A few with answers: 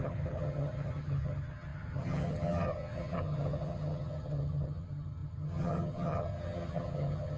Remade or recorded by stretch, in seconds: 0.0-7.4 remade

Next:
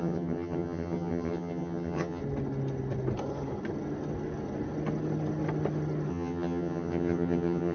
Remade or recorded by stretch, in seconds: 0.0-2.2 remade; 2.2-6.1 recorded; 6.1-7.7 remade

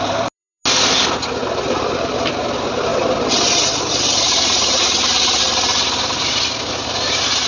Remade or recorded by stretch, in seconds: 0.0-7.5 recorded

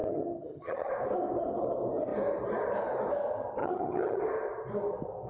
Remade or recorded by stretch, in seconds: 0.0-0.9 remade; 0.9-3.6 recorded; 3.6-4.2 remade; 4.2-5.3 recorded

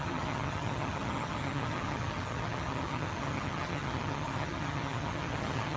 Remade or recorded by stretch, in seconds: 0.0-5.8 remade

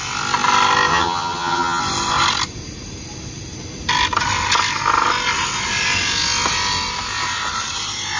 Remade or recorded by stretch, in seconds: 0.0-0.9 recorded; 0.9-1.8 remade; 1.8-8.2 recorded

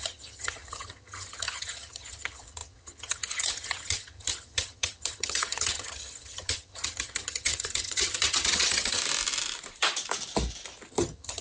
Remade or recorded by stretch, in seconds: 0.0-9.0 remade; 9.0-10.9 recorded; 10.9-11.4 remade